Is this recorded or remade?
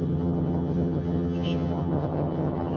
remade